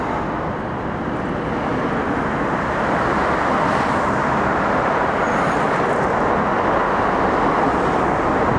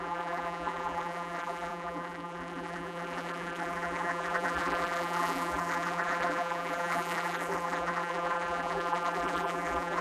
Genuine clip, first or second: first